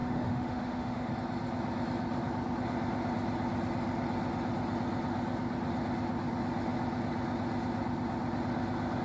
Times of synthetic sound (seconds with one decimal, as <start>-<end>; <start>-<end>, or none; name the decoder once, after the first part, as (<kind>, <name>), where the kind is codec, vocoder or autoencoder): 0.0-1.1 (autoencoder, DAC-VAE)